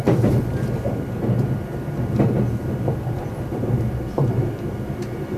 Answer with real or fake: real